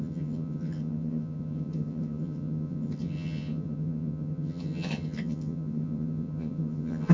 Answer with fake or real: fake